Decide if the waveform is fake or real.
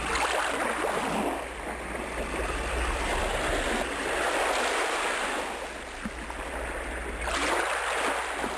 real